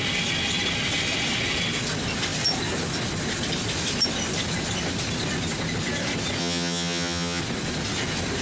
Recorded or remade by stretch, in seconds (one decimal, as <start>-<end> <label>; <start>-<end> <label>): 0.0-6.4 recorded; 6.4-7.4 remade; 7.4-8.4 recorded